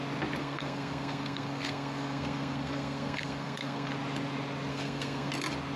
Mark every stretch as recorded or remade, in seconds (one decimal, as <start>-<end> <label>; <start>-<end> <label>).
0.0-0.4 recorded; 0.4-3.9 remade; 3.9-4.7 recorded; 4.7-5.3 remade; 5.3-5.8 recorded